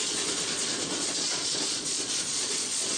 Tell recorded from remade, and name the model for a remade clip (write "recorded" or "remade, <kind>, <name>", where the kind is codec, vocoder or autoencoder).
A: remade, vocoder, Vocos